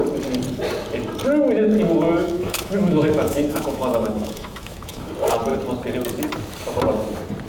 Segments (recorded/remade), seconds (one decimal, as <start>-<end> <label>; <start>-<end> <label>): 0.0-2.2 recorded; 2.2-5.1 remade; 5.1-7.5 recorded